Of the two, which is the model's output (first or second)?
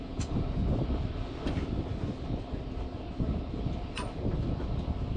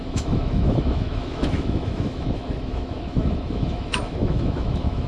second